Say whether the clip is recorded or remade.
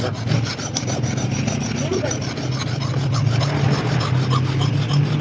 recorded